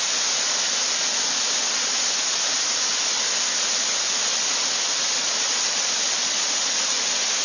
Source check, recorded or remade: recorded